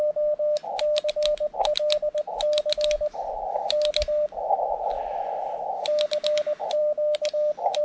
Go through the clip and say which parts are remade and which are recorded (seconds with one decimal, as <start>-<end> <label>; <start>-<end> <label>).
0.0-7.8 recorded